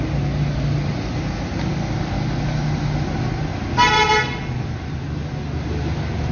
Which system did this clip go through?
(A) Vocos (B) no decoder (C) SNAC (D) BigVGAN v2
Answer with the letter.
B